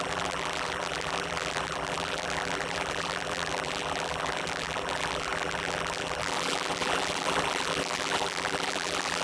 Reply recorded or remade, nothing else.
remade